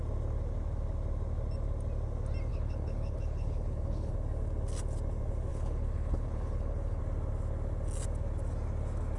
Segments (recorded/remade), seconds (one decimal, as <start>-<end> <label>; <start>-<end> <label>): 0.0-2.5 recorded; 2.5-4.1 remade; 4.1-5.5 recorded; 5.5-7.0 remade; 7.0-9.2 recorded